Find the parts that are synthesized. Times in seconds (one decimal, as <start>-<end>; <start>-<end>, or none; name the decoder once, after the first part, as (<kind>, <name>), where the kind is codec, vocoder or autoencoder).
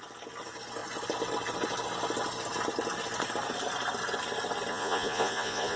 4.7-5.8 (vocoder, Vocos)